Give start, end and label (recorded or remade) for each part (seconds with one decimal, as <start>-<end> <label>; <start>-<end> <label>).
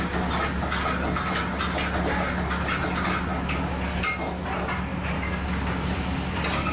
0.0-6.7 recorded